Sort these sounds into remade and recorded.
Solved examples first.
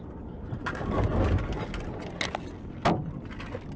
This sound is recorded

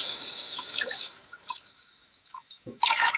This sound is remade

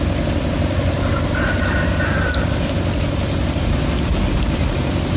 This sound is recorded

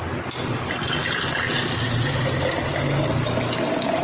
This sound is recorded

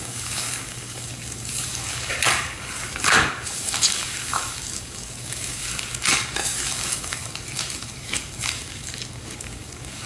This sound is remade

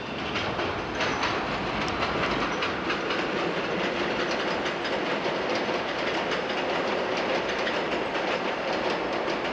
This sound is recorded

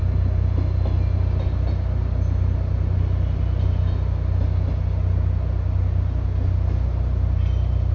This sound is recorded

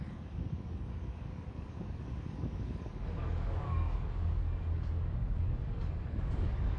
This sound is remade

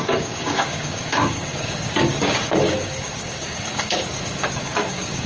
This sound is remade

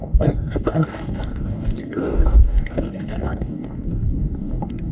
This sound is remade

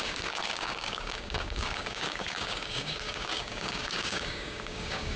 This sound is remade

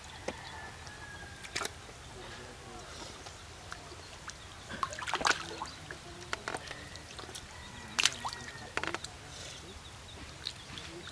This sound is recorded